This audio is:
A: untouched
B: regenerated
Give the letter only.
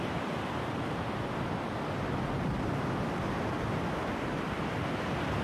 A